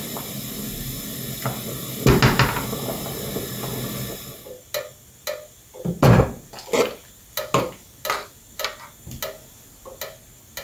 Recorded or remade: recorded